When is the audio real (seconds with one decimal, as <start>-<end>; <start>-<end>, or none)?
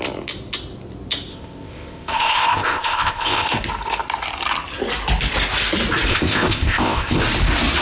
0.0-1.3; 3.6-6.1; 7.2-7.8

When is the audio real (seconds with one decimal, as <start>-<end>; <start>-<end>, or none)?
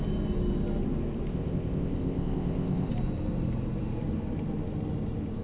0.0-1.3; 2.9-5.4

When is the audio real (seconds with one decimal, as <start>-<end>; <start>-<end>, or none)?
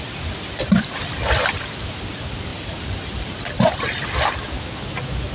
0.0-5.3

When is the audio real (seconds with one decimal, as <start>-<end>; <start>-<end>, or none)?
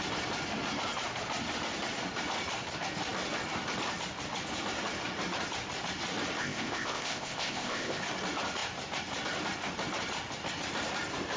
0.0-6.4; 8.0-11.4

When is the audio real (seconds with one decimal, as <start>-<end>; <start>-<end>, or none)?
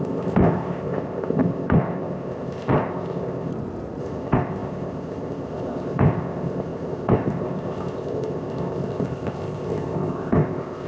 3.5-4.0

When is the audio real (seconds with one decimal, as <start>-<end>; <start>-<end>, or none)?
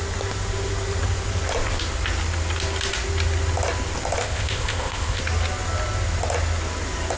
0.0-4.2; 5.2-7.2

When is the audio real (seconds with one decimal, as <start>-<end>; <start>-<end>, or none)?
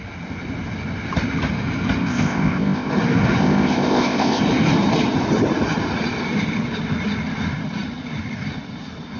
0.0-2.0; 2.9-3.4; 4.4-9.2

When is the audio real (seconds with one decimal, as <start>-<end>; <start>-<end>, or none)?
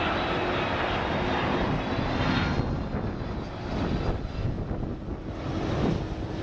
0.0-6.4